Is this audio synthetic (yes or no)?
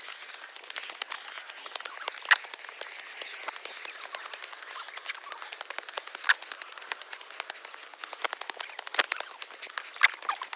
no